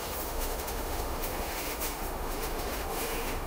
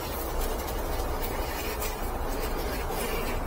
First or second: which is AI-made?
first